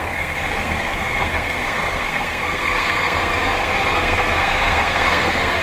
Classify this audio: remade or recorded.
remade